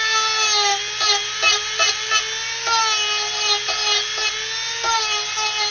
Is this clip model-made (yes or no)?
no